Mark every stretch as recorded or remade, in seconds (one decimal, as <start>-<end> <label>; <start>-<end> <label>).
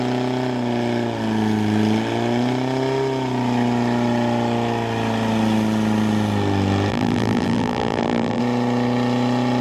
0.0-6.9 recorded; 6.9-8.4 remade; 8.4-9.6 recorded